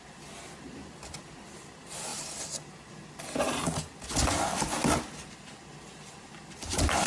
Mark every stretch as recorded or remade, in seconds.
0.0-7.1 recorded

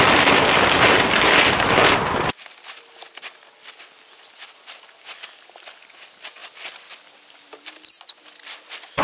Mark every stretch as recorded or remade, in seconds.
0.0-9.0 recorded

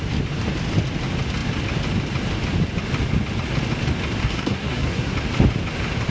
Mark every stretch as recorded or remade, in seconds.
0.0-4.2 recorded; 4.2-5.1 remade; 5.1-6.1 recorded

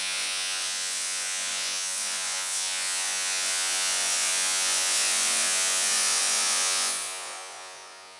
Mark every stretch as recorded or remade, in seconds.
0.0-8.2 remade

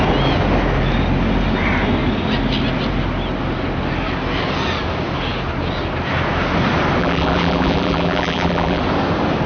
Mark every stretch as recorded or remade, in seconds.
0.0-7.0 recorded; 7.0-8.8 remade; 8.8-9.5 recorded

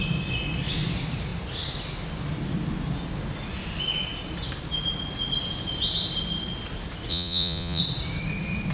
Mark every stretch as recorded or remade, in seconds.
0.0-7.1 recorded; 7.1-7.8 remade; 7.8-8.7 recorded